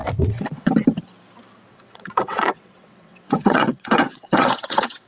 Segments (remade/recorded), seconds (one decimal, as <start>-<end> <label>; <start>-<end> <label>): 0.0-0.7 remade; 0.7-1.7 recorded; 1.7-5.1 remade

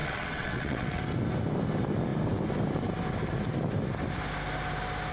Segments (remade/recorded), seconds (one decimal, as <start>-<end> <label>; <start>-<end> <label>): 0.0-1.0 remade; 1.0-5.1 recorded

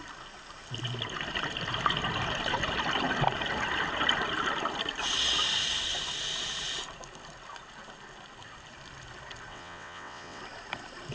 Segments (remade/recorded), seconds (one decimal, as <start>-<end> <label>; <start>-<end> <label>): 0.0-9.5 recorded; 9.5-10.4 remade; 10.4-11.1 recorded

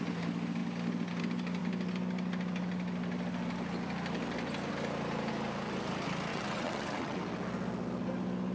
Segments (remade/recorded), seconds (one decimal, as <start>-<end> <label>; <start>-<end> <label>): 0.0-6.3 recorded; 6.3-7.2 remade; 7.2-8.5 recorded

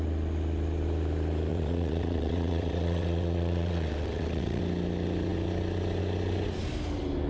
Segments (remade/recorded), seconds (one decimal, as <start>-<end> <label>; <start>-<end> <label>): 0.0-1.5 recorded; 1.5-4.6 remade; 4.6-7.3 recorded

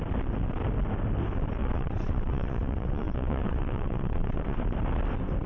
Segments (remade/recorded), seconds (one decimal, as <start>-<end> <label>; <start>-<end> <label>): 0.0-1.6 recorded; 1.6-4.6 remade; 4.6-5.5 recorded

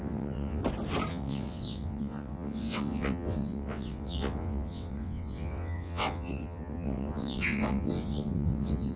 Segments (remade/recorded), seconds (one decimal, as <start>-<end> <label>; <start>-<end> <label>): 0.0-0.6 remade; 0.6-1.1 recorded; 1.1-9.0 remade

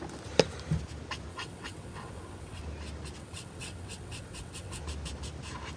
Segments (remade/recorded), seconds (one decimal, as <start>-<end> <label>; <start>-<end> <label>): 0.0-1.3 recorded; 1.3-2.6 remade; 2.6-3.2 recorded; 3.2-4.8 remade; 4.8-5.8 recorded